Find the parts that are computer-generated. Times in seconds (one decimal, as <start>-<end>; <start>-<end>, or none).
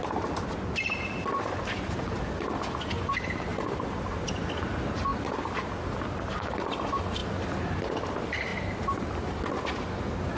3.5-4.2; 7.2-7.8